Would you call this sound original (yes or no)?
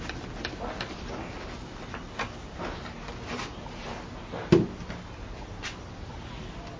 yes